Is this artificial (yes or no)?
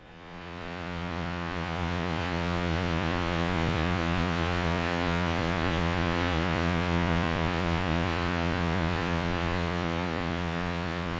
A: yes